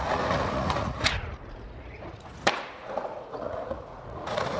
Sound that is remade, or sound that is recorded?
remade